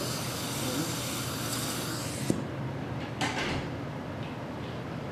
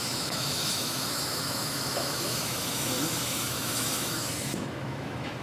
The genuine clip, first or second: first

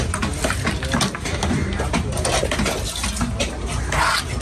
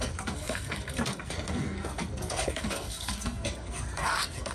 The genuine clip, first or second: first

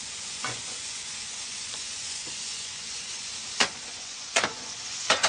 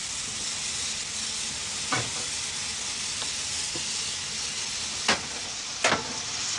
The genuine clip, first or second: second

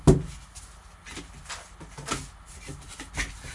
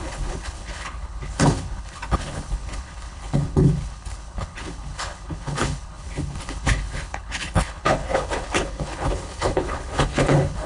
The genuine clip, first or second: first